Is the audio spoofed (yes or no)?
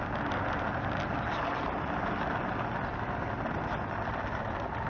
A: no